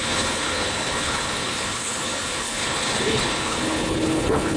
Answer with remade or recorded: remade